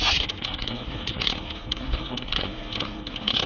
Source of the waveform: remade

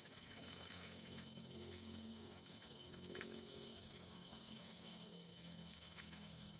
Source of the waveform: remade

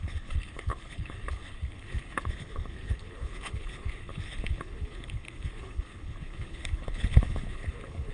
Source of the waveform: remade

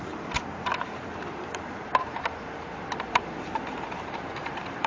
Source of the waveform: remade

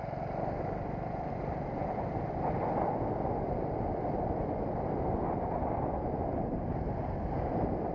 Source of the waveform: recorded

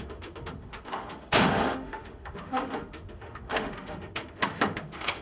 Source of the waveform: remade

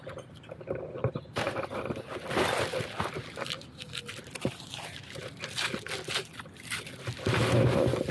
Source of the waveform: recorded